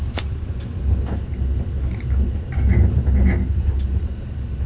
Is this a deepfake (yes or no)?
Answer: no